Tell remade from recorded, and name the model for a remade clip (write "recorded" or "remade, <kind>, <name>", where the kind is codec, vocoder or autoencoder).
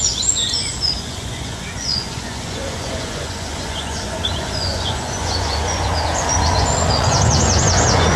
remade, vocoder, Vocos